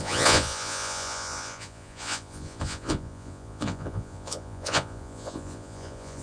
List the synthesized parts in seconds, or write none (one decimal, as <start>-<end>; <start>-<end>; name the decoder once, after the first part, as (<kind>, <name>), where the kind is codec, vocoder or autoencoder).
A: 0.0-6.2 (vocoder, Vocos)